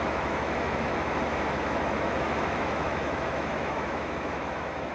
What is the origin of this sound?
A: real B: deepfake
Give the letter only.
B